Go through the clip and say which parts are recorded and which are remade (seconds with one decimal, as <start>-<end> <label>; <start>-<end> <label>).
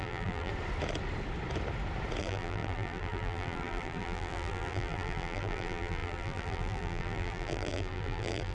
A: 0.0-0.5 remade; 0.5-2.2 recorded; 2.2-8.5 remade